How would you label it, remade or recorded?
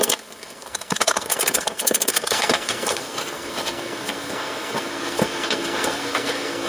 remade